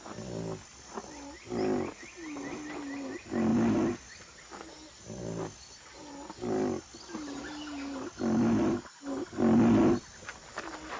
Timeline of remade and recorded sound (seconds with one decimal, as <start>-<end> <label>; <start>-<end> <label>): 0.0-11.0 recorded